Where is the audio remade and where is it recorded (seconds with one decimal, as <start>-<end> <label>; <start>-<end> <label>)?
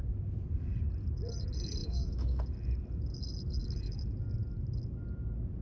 0.0-1.8 recorded; 1.8-2.4 remade; 2.4-5.6 recorded